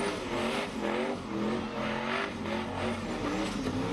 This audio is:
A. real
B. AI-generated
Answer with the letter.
A